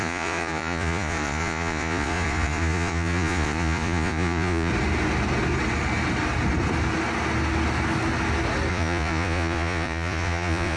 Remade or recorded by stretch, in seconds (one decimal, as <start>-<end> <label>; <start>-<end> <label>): 0.0-4.7 remade; 4.7-8.7 recorded; 8.7-10.8 remade